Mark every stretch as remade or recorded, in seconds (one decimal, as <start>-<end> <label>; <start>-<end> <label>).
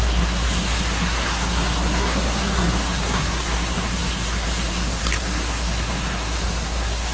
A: 0.0-7.1 remade